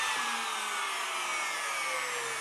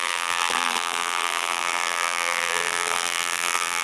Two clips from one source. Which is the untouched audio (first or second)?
first